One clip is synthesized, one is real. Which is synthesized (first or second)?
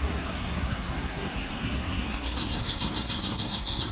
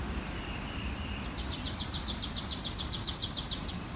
first